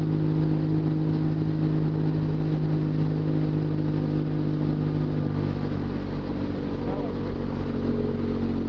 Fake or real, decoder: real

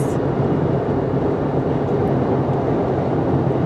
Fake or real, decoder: real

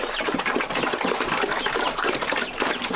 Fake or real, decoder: real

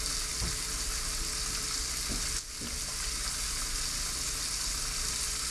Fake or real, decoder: real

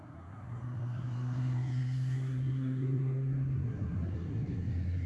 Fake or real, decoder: fake, codec, SNAC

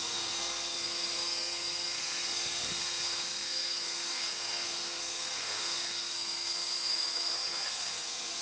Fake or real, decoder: fake, codec, SNAC